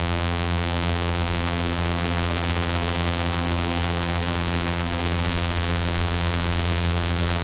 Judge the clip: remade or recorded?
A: remade